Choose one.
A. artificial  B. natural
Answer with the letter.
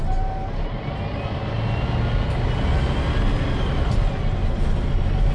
B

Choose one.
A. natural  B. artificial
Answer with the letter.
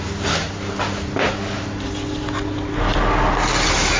A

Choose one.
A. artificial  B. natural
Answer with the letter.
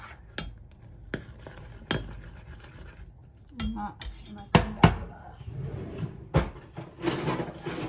B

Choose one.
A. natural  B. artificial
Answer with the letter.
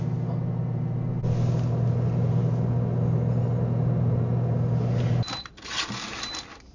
A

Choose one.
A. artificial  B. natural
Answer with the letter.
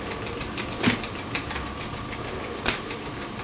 B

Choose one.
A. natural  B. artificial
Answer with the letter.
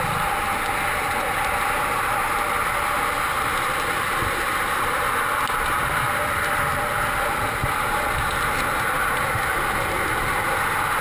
A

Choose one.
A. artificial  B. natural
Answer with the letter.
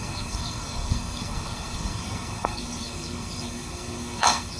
A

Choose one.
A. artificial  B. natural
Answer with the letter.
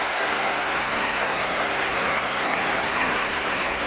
A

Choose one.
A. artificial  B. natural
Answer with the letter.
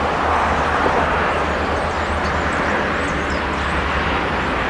B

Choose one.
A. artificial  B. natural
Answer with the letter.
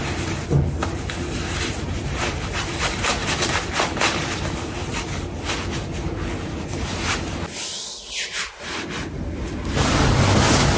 B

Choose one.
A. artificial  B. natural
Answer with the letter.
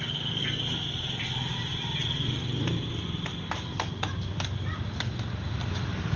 B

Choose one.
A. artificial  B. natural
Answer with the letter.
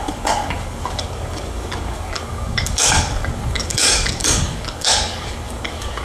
A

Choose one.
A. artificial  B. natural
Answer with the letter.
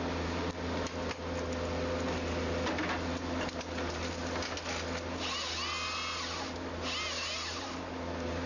B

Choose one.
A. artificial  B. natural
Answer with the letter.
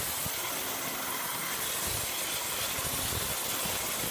B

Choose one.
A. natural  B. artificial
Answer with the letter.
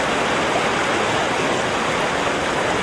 A